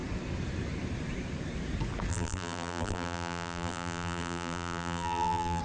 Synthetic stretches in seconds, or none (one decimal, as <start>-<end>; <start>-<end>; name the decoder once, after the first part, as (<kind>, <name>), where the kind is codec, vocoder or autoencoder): 2.1-5.6 (vocoder, BigVGAN v2)